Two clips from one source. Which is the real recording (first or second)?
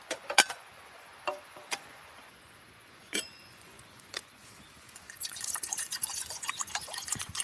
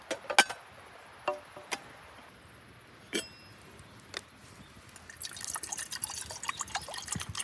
second